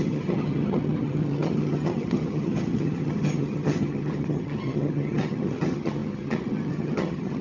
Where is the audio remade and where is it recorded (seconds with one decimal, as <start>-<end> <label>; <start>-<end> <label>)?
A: 0.0-7.4 remade